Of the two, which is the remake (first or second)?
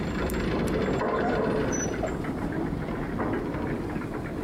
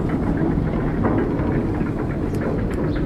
first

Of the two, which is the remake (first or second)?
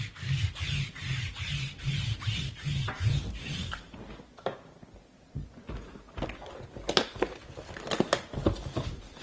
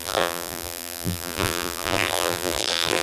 second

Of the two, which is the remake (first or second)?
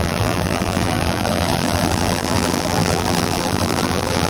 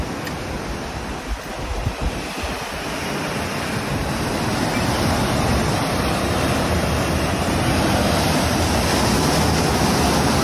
first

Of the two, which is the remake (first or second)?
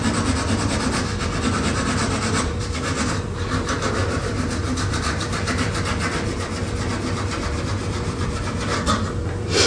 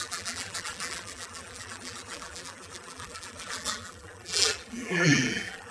second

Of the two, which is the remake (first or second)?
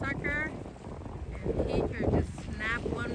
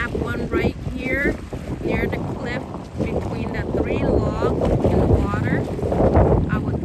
second